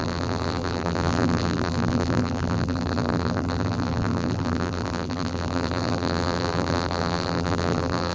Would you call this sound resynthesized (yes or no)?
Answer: yes